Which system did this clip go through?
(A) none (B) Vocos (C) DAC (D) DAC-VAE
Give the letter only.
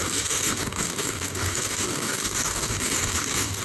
C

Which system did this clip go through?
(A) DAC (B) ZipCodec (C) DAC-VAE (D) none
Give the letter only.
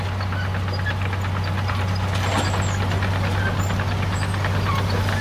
D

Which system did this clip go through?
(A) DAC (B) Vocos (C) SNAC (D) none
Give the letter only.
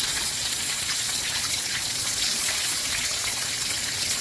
B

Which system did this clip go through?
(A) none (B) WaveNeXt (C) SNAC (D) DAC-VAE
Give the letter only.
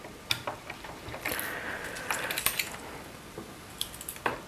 A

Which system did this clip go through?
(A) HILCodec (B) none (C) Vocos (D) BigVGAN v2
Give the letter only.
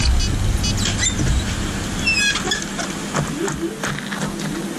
B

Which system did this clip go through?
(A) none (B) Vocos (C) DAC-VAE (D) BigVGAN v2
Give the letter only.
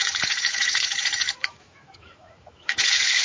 C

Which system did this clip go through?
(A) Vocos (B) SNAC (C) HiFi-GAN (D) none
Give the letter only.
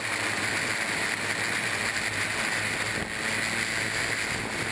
D